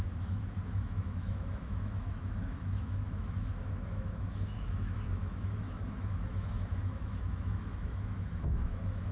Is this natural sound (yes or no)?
no